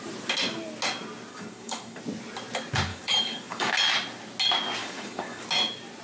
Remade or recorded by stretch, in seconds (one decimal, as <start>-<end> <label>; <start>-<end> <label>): 0.0-1.3 recorded; 1.3-2.0 remade; 2.0-2.9 recorded; 2.9-3.7 remade; 3.7-4.8 recorded; 4.8-5.4 remade; 5.4-6.0 recorded